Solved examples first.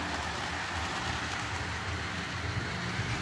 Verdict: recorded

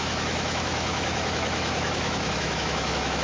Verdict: remade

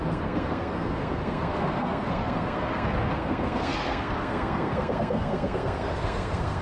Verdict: remade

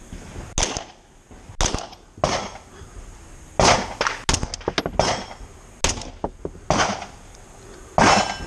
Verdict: recorded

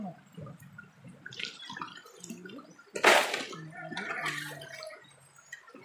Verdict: recorded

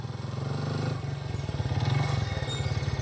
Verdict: recorded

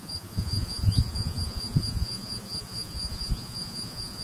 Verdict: remade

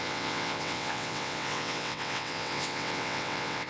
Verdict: remade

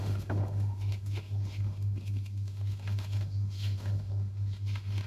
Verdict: remade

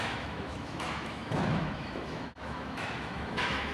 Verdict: remade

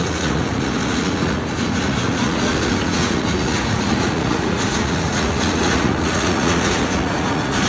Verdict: remade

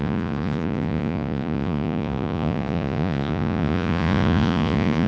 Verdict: remade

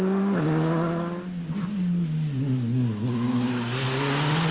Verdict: recorded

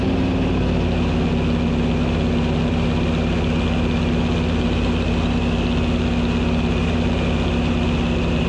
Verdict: recorded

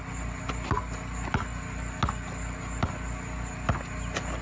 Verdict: recorded